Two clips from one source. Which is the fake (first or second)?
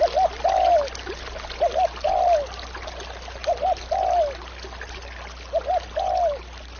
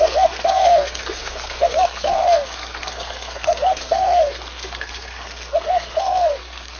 second